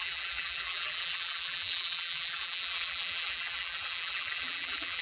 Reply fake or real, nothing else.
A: fake